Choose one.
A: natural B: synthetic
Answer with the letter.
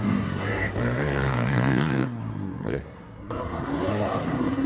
B